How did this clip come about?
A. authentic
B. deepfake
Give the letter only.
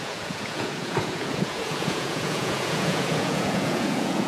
B